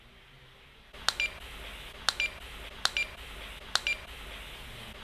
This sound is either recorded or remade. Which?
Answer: recorded